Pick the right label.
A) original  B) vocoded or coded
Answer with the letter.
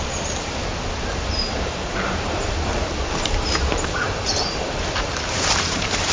B